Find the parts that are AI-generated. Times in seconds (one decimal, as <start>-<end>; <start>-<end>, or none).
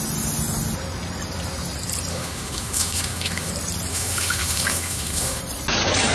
2.1-3.5; 3.9-5.4